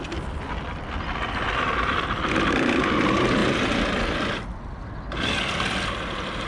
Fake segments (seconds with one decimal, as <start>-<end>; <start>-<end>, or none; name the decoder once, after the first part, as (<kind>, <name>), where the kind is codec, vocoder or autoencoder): none